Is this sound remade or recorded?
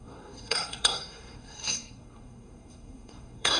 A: remade